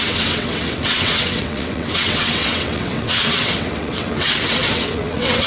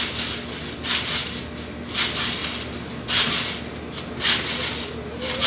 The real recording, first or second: second